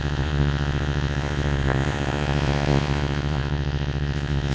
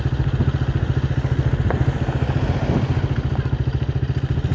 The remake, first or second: first